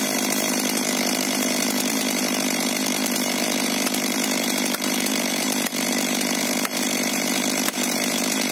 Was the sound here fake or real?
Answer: fake